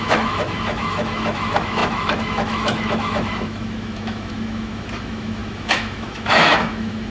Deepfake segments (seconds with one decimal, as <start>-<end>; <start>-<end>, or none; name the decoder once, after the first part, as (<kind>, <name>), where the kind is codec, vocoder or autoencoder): 0.0-7.1 (autoencoder, DAC-VAE)